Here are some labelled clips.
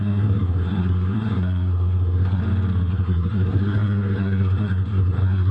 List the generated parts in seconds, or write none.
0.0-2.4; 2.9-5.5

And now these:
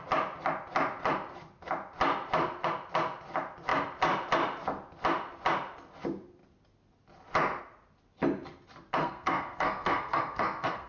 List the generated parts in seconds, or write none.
9.0-10.9

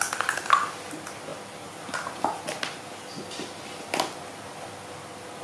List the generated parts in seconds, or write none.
none

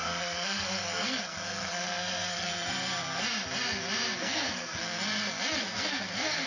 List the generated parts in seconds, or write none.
0.0-2.5; 4.2-4.8; 5.6-6.5

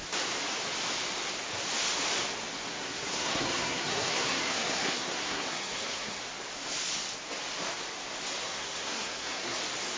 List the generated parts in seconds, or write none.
2.7-6.2; 8.4-9.6

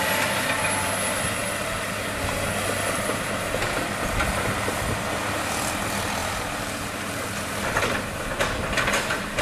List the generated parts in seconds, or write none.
none

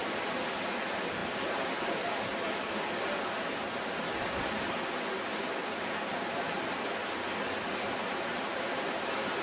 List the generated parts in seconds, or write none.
none

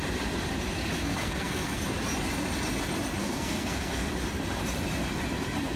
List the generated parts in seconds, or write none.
1.0-1.8; 3.2-4.1